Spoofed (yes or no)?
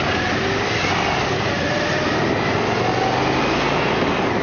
no